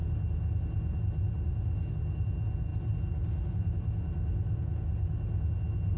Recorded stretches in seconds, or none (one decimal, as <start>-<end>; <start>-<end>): 0.0-6.0